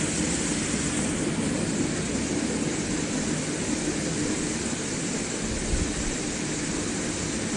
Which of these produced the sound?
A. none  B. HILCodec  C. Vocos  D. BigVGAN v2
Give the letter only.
A